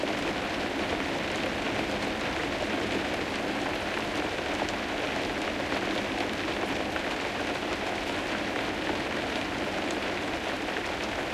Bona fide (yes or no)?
yes